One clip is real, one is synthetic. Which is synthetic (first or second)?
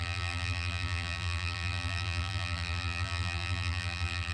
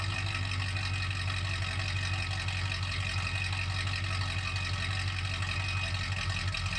first